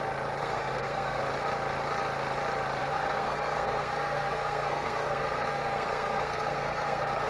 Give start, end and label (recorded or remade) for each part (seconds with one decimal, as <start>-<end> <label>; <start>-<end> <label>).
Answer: 0.0-0.4 recorded; 0.4-1.2 remade; 1.2-2.8 recorded; 2.8-7.3 remade